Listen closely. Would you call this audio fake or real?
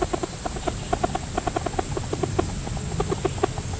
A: real